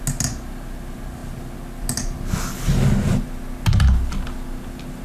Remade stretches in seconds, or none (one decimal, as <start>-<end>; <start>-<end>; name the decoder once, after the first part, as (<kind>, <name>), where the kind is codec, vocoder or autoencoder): none